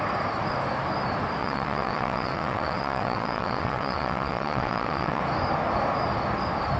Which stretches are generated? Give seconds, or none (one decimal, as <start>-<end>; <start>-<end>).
1.4-5.2